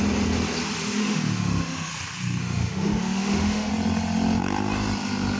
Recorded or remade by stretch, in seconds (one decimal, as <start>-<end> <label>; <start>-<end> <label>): 0.0-1.0 recorded; 1.0-1.9 remade; 1.9-2.4 recorded; 2.4-3.7 remade; 3.7-5.4 recorded